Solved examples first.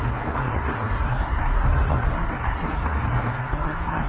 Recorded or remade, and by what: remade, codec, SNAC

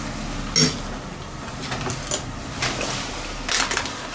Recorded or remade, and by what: recorded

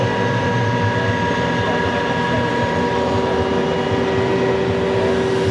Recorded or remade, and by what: recorded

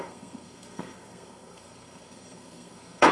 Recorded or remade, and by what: remade, codec, SNAC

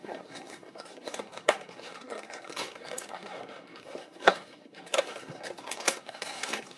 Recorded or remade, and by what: remade, codec, SNAC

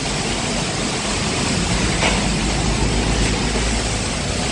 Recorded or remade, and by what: recorded